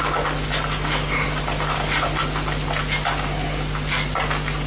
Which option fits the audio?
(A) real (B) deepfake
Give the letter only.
A